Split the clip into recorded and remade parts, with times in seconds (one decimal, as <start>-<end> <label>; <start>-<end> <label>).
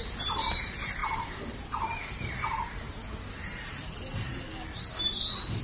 0.0-1.0 recorded; 1.0-4.4 remade; 4.4-5.6 recorded